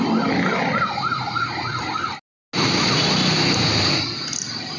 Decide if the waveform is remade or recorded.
recorded